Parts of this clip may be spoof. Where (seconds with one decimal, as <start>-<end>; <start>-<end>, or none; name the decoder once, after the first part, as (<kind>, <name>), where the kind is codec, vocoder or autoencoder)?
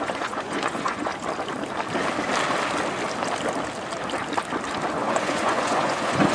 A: 0.0-1.1 (vocoder, Vocos); 4.9-6.3